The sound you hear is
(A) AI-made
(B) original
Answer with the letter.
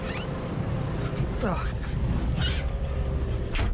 B